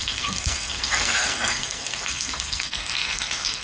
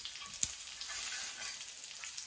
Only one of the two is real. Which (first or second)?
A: second